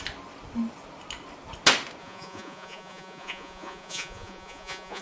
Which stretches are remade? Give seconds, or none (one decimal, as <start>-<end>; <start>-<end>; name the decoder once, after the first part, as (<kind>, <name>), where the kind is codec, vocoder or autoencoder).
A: 2.0-5.0 (vocoder, Vocos)